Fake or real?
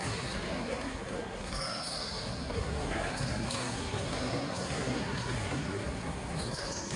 fake